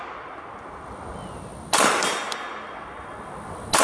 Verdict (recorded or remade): recorded